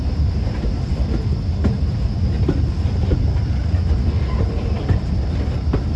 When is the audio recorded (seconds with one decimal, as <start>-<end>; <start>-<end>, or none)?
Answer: 0.0-6.0